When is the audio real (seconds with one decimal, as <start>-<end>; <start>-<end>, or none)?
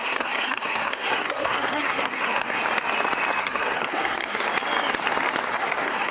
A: 2.6-3.4; 4.5-5.5